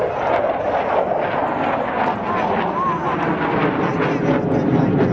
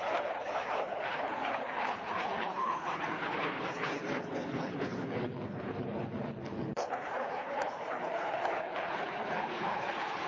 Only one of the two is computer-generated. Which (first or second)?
second